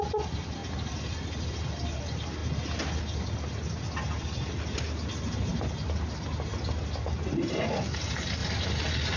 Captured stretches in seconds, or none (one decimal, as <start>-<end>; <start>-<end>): 0.0-9.2